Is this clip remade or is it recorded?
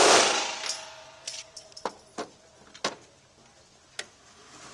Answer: recorded